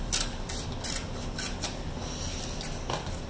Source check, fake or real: real